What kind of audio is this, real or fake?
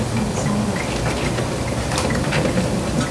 real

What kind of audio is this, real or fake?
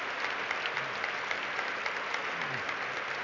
real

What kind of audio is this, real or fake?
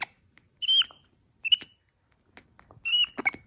real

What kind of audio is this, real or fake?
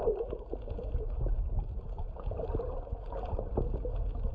real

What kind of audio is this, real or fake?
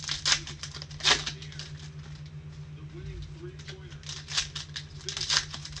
real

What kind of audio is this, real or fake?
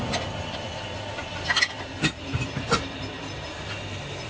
real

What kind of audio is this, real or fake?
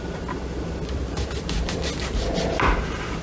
real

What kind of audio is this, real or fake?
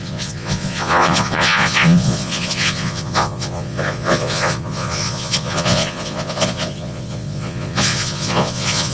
fake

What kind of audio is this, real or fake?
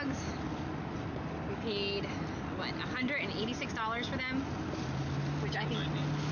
real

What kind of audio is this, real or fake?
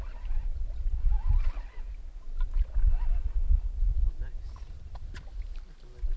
real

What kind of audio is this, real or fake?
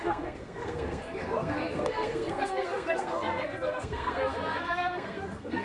fake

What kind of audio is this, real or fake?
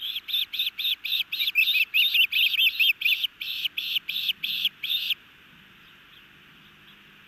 real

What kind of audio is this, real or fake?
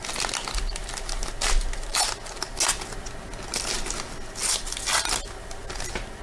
real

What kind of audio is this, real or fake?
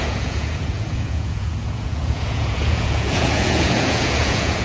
fake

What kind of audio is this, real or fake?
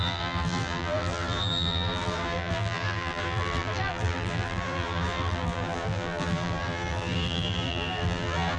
fake